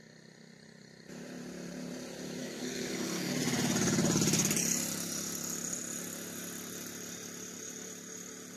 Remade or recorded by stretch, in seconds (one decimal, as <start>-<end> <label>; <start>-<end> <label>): 0.0-2.4 recorded; 2.4-3.3 remade; 3.3-8.6 recorded